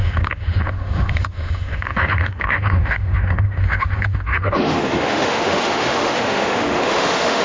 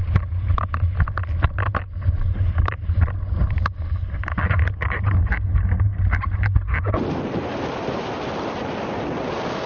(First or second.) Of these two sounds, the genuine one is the second